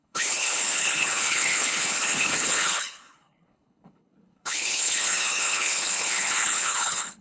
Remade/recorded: remade